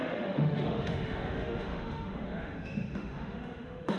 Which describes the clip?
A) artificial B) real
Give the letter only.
A